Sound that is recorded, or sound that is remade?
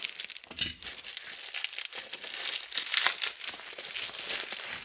recorded